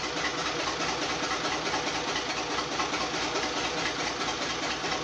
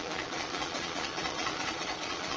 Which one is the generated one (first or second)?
second